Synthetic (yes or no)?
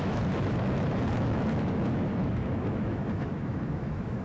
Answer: yes